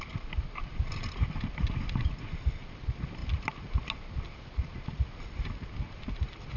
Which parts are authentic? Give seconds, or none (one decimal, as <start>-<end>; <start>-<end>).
0.0-6.6